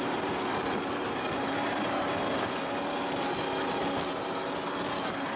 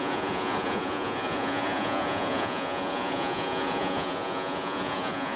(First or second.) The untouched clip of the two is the first